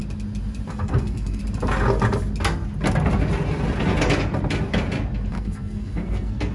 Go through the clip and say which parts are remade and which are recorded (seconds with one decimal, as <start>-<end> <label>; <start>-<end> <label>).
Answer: 0.0-0.7 recorded; 0.7-1.4 remade; 1.4-5.3 recorded; 5.3-6.5 remade